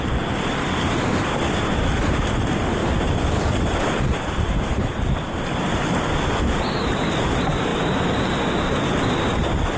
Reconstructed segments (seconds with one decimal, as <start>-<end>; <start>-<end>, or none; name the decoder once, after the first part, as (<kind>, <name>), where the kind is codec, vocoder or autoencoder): none